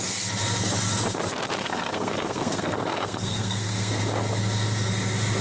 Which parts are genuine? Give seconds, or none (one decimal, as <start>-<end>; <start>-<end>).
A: 0.0-1.6; 4.0-5.4